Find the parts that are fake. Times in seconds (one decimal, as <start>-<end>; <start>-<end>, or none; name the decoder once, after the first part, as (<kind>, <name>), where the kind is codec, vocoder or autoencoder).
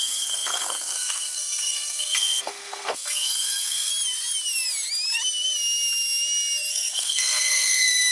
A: 0.0-3.9 (codec, SNAC); 6.7-8.1